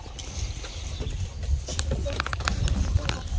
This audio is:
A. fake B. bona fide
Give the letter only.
B